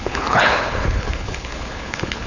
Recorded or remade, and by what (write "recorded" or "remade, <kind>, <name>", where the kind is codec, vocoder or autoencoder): remade, codec, HILCodec